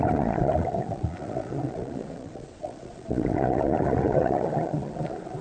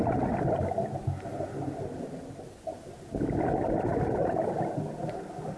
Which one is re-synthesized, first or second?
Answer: first